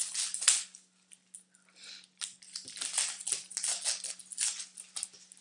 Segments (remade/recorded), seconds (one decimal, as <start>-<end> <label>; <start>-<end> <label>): 0.0-5.4 recorded